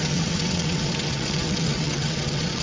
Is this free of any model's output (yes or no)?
no